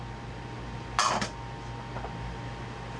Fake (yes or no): no